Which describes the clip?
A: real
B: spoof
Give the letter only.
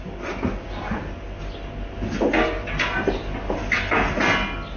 A